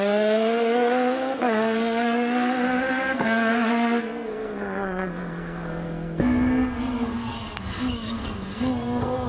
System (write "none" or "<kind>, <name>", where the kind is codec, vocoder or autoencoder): codec, SNAC